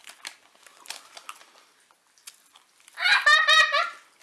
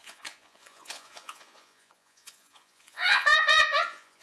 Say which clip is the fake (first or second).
second